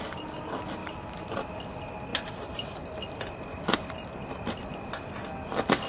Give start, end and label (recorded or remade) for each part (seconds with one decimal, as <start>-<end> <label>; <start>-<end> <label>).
0.0-5.9 recorded